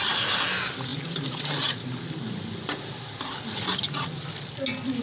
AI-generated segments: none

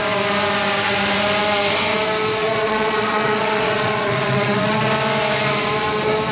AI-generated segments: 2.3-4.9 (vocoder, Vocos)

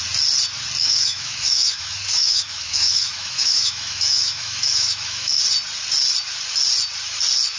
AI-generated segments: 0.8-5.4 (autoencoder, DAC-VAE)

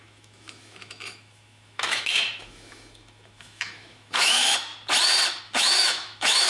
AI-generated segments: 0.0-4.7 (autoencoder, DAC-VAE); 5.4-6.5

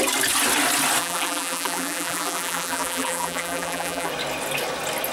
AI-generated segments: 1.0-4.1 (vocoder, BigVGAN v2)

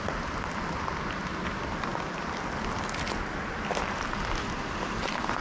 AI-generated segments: none